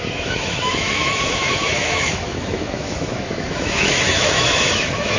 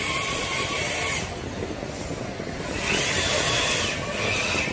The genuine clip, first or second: second